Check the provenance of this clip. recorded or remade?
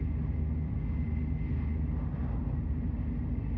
recorded